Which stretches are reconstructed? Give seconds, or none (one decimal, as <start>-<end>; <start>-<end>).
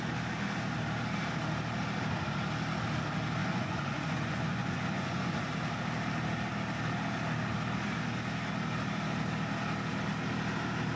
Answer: 3.4-5.5